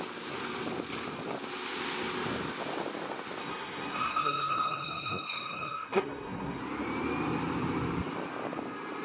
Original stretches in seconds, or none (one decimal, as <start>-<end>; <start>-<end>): 0.0-3.4; 6.6-9.0